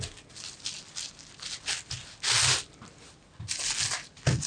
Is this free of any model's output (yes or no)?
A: yes